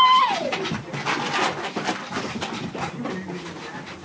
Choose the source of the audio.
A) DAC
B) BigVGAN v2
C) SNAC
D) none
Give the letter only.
D